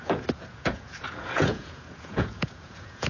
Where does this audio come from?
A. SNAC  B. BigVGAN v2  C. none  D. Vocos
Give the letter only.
D